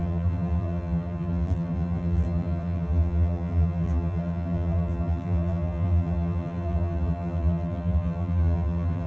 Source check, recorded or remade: remade